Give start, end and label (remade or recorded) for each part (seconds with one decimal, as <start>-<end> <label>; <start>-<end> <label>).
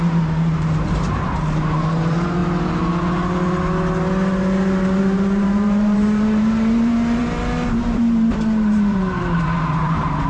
0.0-2.4 remade; 2.4-5.0 recorded; 5.0-7.2 remade; 7.2-7.8 recorded; 7.8-10.3 remade